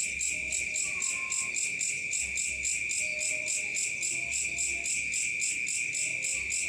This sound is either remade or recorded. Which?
recorded